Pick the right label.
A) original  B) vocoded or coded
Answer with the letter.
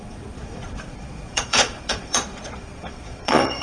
B